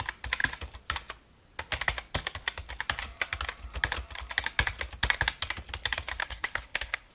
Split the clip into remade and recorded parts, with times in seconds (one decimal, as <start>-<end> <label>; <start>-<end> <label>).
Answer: 0.0-6.2 recorded; 6.2-7.1 remade